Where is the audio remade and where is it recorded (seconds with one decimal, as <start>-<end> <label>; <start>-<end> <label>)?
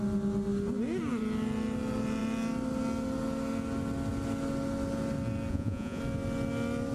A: 0.0-5.5 recorded; 5.5-6.0 remade; 6.0-6.9 recorded